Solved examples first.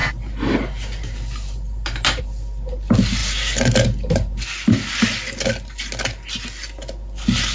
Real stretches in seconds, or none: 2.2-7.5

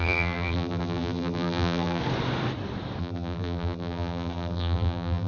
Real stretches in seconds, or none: 2.0-3.0

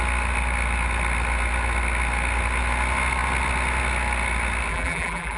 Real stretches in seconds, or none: 0.0-4.7

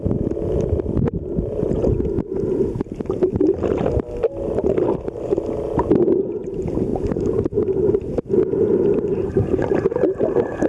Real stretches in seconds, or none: 0.0-6.9; 8.3-9.1